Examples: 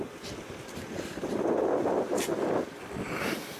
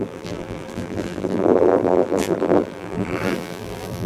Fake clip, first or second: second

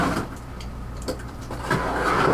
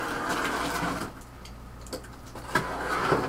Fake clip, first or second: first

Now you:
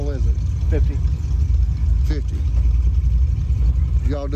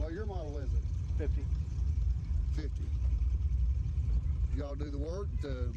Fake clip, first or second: second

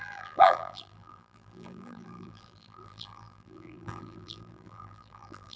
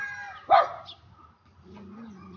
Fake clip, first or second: first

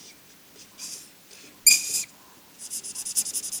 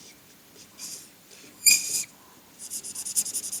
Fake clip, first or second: second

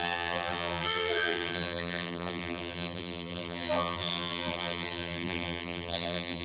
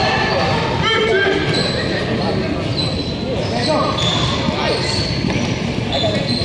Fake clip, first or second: first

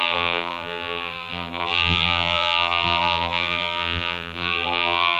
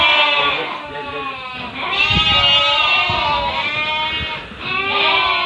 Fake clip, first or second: first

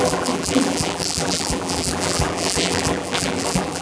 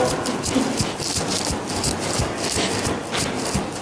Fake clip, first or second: first